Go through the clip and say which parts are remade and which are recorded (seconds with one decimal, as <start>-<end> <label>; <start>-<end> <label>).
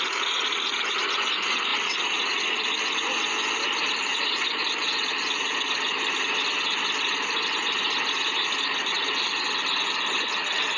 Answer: 0.0-10.8 recorded